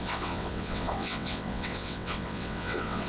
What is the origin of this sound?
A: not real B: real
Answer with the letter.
A